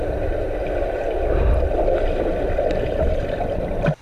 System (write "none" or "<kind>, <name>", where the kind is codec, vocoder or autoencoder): none